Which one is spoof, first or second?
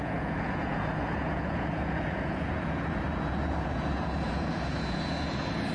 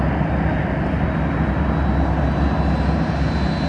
first